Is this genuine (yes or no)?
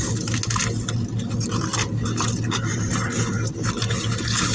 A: yes